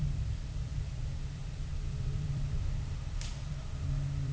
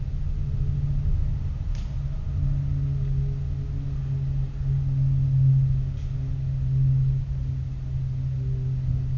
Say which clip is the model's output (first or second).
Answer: first